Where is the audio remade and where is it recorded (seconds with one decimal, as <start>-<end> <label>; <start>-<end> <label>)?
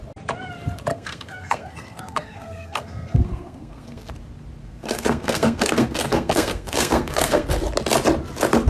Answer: 0.0-0.9 recorded; 0.9-4.1 remade; 4.1-4.6 recorded; 4.6-7.5 remade; 7.5-8.7 recorded